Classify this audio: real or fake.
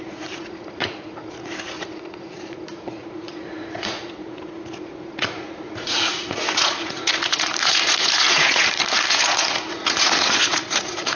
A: fake